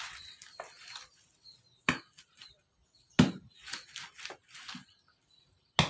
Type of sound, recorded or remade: recorded